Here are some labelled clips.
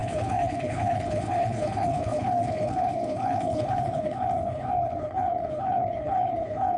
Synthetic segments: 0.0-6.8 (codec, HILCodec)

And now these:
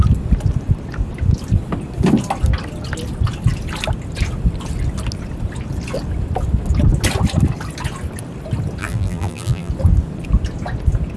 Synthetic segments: 8.8-9.7 (vocoder, BigVGAN v2)

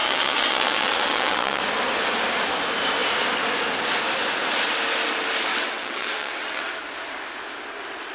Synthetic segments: 0.0-1.6 (vocoder, WaveNeXt); 5.5-6.7

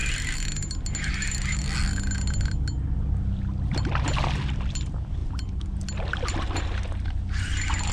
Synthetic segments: none

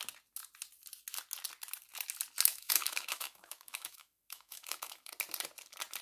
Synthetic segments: 2.5-5.1 (autoencoder, DAC-VAE)

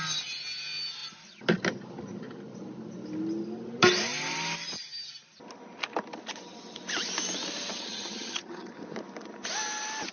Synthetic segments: 7.7-8.7 (vocoder, HiFi-GAN)